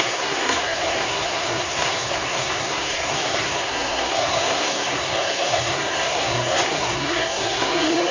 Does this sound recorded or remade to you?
remade